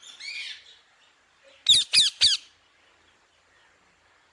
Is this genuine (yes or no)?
yes